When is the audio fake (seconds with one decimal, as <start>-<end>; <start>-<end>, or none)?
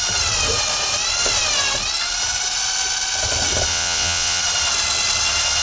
3.7-4.4